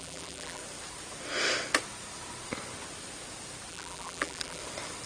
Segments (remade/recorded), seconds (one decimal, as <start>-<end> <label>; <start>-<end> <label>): 0.0-0.6 remade; 0.6-3.7 recorded; 3.7-4.6 remade; 4.6-5.1 recorded